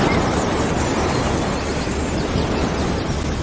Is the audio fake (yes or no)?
no